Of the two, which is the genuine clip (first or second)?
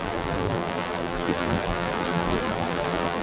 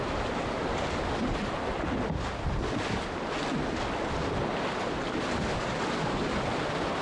second